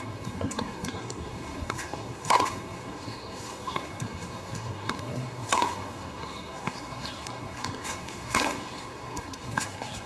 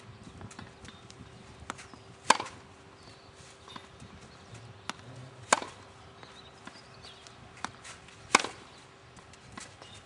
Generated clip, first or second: first